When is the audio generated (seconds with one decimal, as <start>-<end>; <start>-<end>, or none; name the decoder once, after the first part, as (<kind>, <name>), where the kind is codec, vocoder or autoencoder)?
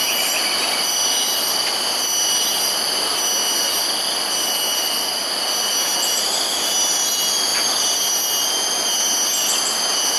none